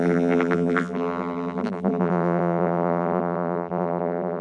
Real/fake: fake